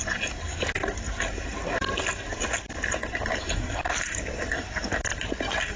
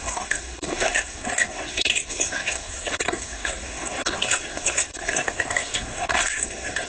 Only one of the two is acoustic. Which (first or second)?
first